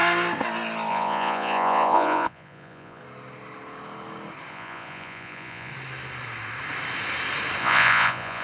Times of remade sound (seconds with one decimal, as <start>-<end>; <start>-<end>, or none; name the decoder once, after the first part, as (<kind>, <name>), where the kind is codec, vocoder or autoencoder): 0.9-3.0 (vocoder, Vocos); 4.5-5.7; 7.6-8.4